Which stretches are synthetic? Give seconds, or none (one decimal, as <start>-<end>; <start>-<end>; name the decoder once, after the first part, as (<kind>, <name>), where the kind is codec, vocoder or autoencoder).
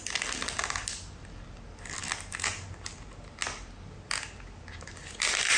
none